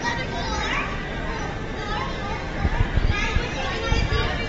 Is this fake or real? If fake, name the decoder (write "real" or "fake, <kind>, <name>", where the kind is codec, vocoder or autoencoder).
real